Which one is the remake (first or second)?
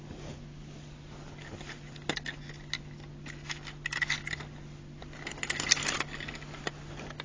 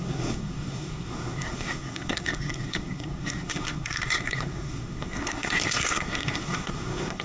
second